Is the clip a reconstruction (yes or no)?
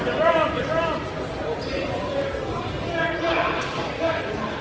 no